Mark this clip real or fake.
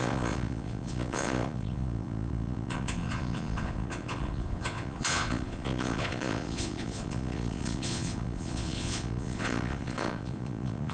fake